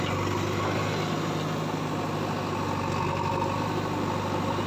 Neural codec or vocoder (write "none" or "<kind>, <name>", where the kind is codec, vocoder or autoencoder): none